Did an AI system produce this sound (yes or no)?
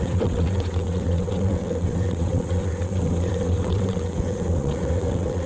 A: yes